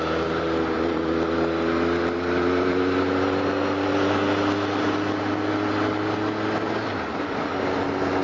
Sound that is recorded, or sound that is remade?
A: recorded